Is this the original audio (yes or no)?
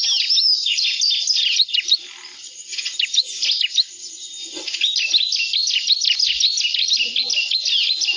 yes